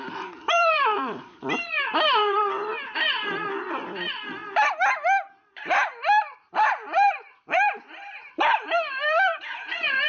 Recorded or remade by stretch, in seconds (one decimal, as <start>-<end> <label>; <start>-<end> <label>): 0.0-4.4 remade; 4.4-6.5 recorded; 6.5-10.1 remade